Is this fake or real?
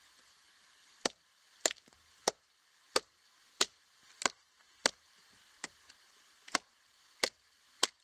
real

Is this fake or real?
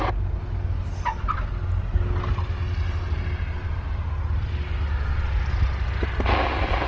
real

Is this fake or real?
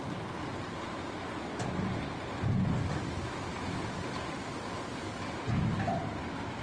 real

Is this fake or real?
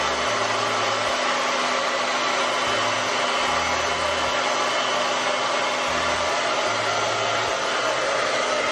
real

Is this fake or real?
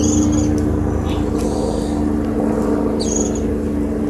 real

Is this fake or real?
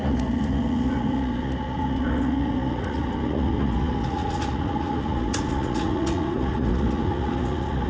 fake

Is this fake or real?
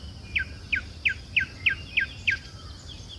real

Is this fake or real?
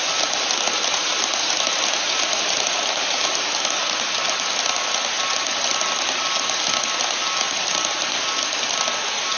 real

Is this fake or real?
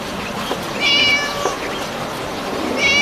real